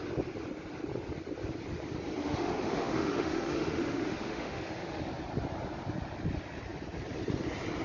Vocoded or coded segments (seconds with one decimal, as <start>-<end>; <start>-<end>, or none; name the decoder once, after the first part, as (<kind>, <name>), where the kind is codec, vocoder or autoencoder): 2.2-5.0 (autoencoder, DAC-VAE)